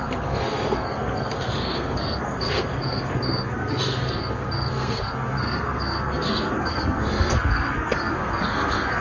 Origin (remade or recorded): remade